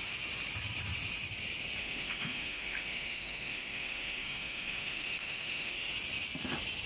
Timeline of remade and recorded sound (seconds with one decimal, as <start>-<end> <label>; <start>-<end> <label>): 0.0-1.8 recorded; 1.8-5.9 remade; 5.9-6.9 recorded